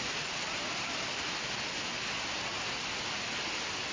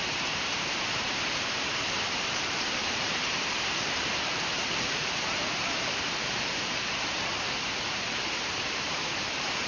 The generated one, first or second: second